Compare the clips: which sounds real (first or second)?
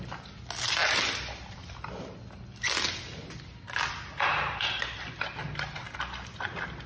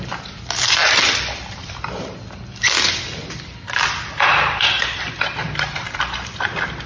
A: first